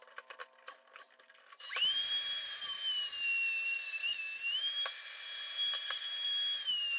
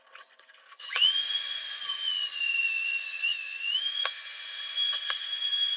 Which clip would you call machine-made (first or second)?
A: second